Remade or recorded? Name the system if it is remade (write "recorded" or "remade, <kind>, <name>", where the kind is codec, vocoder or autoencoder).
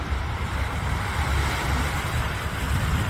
recorded